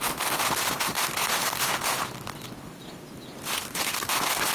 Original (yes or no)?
yes